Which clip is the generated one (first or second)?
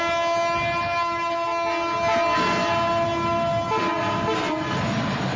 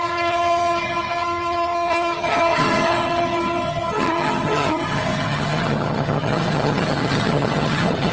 second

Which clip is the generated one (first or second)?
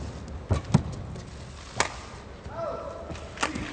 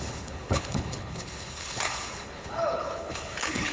second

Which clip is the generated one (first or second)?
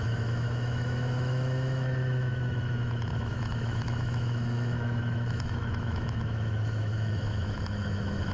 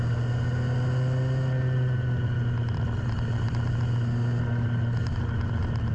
first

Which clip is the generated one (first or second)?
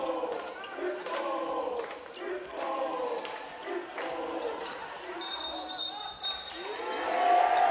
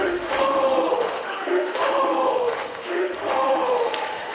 second